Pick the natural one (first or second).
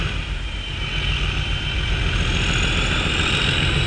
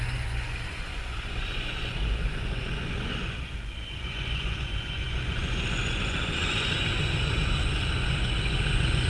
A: first